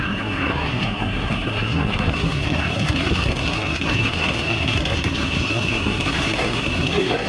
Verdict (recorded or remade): remade